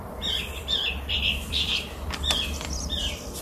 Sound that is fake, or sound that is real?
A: fake